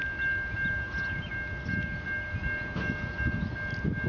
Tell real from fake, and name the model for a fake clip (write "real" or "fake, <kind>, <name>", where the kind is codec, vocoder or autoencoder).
real